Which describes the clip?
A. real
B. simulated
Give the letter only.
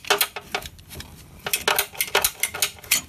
A